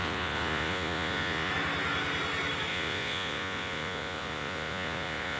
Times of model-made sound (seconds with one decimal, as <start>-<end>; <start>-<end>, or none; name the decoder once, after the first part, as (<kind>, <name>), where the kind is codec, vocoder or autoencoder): 0.0-1.5 (vocoder, Vocos); 2.7-5.4